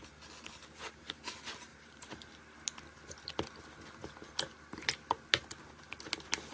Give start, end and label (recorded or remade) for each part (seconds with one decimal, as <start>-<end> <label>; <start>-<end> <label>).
0.0-0.6 recorded; 0.6-1.2 remade; 1.2-1.7 recorded; 1.7-2.3 remade; 2.3-6.5 recorded